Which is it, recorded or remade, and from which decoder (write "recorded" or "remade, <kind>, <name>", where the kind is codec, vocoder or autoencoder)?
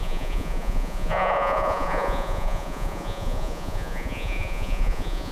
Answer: remade, vocoder, Vocos